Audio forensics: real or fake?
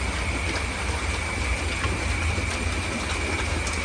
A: real